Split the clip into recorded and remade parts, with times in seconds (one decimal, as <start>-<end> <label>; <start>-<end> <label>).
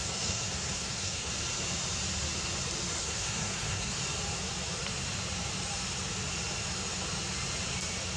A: 0.0-1.3 remade; 1.3-3.0 recorded; 3.0-4.0 remade; 4.0-8.2 recorded